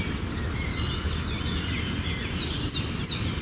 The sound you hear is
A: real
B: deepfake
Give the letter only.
A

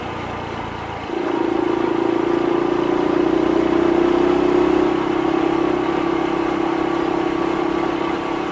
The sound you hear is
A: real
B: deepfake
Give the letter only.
A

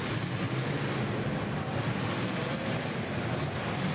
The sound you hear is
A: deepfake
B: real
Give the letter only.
B